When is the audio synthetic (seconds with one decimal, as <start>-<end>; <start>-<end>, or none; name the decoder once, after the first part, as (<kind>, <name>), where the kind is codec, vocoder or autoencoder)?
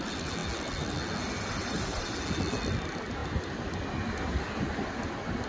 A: none